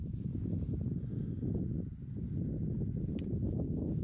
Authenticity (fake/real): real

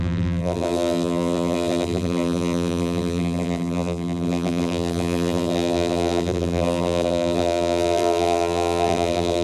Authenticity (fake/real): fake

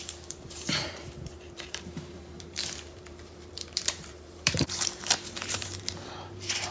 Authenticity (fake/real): fake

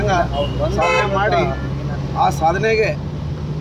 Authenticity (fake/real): real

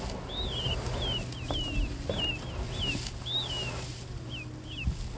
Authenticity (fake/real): real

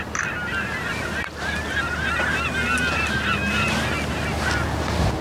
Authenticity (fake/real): real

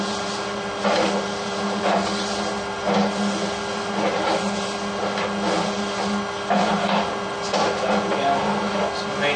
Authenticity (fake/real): real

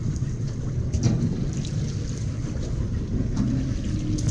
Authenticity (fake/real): real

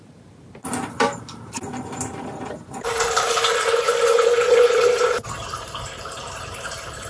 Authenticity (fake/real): fake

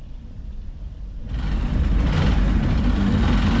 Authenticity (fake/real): fake